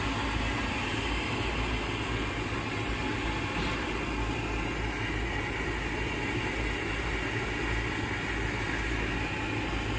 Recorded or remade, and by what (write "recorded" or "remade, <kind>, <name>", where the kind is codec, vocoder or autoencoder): recorded